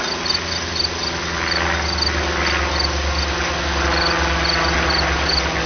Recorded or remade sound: recorded